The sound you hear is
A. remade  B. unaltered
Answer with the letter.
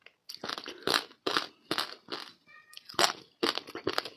B